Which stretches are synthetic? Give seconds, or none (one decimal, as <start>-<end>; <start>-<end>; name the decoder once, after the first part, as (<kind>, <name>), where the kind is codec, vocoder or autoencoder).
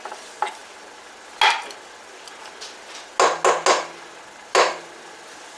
none